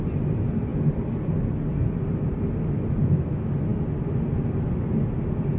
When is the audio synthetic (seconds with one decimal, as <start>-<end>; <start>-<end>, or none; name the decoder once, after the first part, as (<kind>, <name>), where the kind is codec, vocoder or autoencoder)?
none